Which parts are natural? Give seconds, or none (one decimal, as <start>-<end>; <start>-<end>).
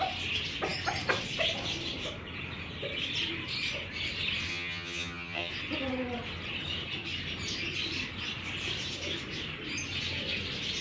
0.0-4.5; 5.5-10.8